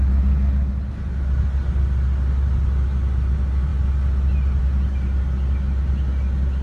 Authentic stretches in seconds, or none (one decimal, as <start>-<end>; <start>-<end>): 0.0-6.6